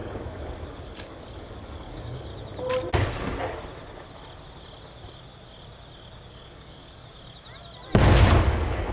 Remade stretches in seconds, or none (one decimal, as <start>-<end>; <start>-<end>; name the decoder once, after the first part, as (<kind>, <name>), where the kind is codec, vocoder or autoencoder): 0.0-2.3 (codec, DAC); 6.3-7.0; 8.4-8.9